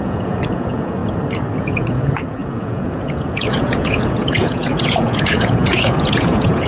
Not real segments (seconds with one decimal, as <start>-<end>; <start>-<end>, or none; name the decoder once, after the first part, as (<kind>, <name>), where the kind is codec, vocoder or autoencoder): 0.0-1.0 (vocoder, Vocos); 1.6-6.7